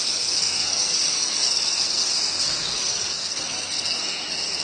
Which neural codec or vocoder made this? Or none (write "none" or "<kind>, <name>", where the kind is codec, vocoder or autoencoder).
codec, SNAC